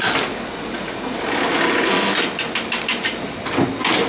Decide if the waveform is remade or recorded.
recorded